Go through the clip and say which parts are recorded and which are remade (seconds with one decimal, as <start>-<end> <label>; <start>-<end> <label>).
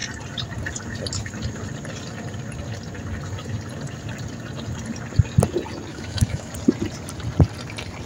0.0-5.9 recorded; 5.9-6.5 remade; 6.5-8.1 recorded